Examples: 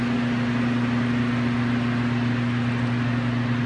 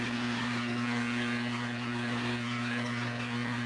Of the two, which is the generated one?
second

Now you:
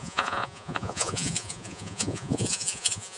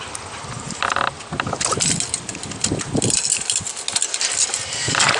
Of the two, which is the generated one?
first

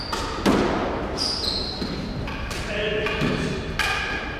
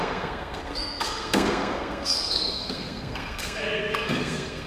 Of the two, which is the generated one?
second